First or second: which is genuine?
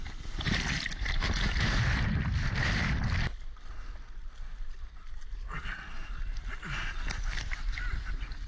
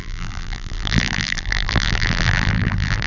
first